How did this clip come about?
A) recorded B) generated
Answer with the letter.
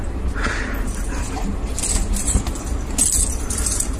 A